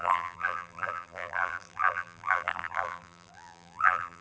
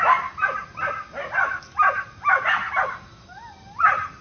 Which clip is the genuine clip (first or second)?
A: second